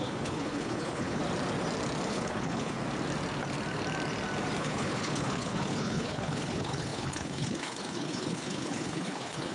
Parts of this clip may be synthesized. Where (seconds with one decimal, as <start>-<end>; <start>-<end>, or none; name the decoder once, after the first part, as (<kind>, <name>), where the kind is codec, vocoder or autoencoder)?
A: 0.0-1.2 (codec, HILCodec); 2.1-2.8; 4.6-9.5